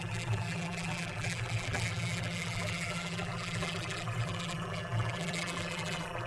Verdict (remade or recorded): remade